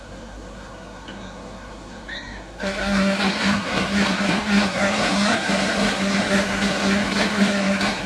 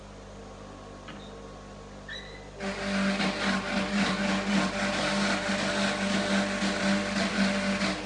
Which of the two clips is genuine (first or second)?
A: second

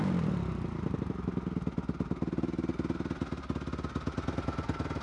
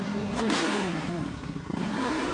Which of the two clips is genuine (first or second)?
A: first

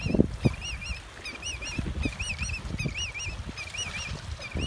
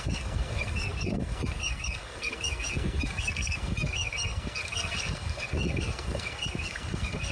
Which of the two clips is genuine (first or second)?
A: first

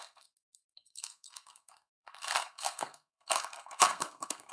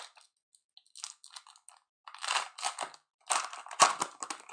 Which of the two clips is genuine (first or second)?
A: second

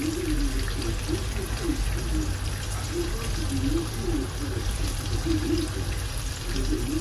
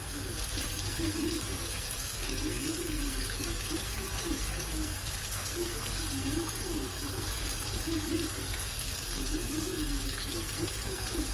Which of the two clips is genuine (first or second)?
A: first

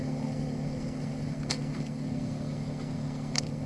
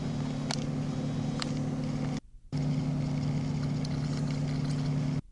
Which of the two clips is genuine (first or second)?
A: second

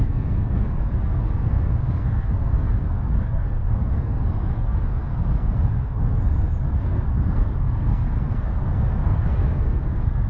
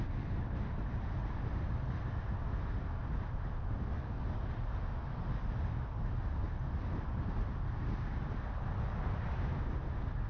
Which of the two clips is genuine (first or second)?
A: second